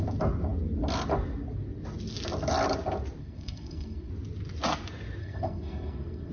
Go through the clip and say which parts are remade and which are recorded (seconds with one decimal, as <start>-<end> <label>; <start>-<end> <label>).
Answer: 0.0-3.2 recorded; 3.2-4.1 remade; 4.1-5.2 recorded; 5.2-6.3 remade